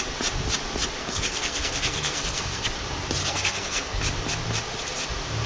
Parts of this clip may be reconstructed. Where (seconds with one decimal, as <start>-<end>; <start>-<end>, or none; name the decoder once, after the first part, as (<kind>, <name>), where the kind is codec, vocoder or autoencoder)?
1.0-2.7 (codec, SNAC); 3.2-4.0